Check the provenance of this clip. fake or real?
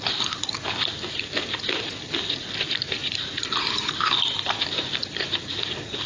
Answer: real